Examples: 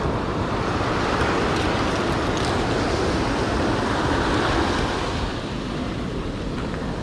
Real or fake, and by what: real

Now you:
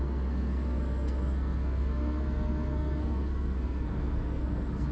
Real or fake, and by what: fake, codec, SNAC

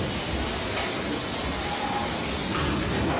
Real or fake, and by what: real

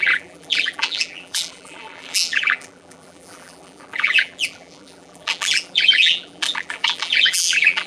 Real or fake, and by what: fake, vocoder, BigVGAN v2